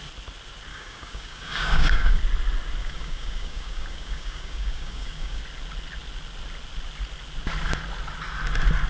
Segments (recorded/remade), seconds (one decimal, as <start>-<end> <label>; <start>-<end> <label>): 0.0-0.7 recorded; 0.7-2.2 remade; 2.2-2.8 recorded; 2.8-5.4 remade; 5.4-8.9 recorded